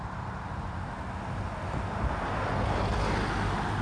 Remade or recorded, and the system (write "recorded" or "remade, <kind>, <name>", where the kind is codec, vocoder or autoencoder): recorded